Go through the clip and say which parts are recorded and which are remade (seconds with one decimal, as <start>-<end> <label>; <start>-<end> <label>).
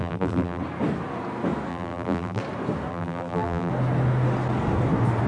0.0-0.6 remade; 0.6-1.7 recorded; 1.7-2.4 remade; 2.4-2.9 recorded; 2.9-3.7 remade; 3.7-5.3 recorded